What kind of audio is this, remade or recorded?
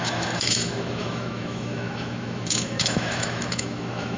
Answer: remade